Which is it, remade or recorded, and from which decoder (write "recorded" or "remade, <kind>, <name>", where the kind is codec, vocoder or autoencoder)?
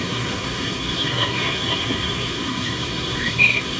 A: remade, codec, SNAC